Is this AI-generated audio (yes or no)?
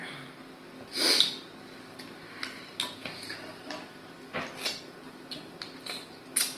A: no